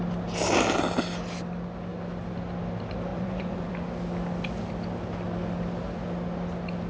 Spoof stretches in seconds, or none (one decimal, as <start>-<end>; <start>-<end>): 3.1-3.7